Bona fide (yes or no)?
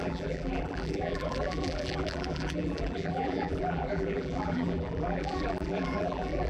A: no